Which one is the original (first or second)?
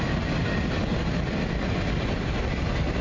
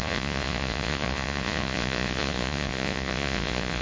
first